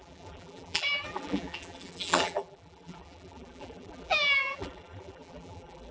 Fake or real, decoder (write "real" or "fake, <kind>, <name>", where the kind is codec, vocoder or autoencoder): fake, vocoder, BigVGAN v2